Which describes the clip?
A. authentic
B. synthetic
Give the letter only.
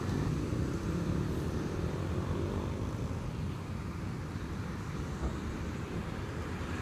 B